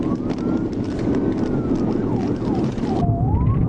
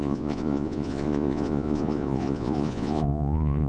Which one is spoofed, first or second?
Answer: second